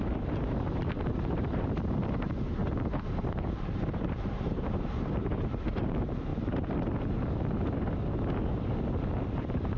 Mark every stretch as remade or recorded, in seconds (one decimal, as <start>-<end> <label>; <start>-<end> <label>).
0.0-2.6 remade; 2.6-3.3 recorded; 3.3-6.3 remade; 6.3-9.3 recorded; 9.3-9.8 remade